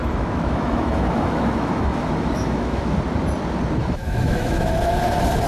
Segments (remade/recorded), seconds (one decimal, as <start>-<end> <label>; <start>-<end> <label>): 0.0-3.0 remade; 3.0-3.8 recorded; 3.8-4.9 remade; 4.9-5.5 recorded